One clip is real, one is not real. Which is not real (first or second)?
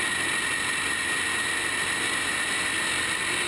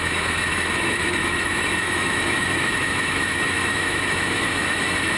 second